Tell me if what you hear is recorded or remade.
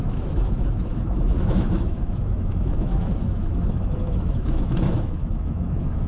remade